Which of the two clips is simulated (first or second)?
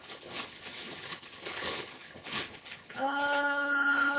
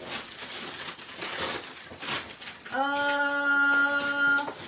first